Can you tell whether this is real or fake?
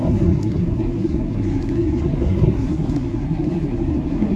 fake